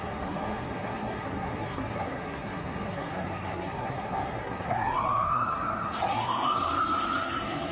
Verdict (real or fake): fake